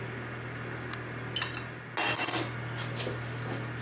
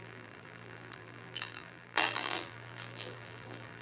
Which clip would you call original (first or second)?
first